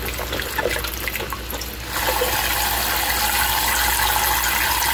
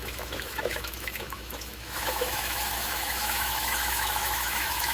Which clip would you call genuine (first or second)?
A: first